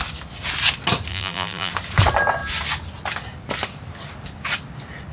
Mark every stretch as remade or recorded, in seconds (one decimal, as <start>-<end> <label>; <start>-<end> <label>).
0.0-1.1 recorded; 1.1-1.7 remade; 1.7-5.1 recorded